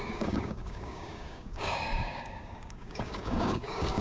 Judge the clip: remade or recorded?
remade